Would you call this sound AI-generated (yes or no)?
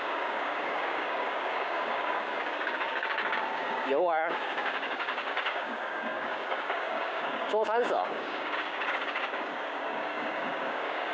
yes